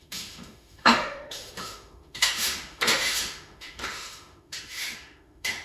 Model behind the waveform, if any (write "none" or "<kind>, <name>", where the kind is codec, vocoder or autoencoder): autoencoder, DAC-VAE